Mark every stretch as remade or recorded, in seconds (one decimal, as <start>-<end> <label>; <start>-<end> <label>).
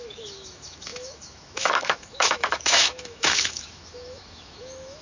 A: 0.0-5.0 remade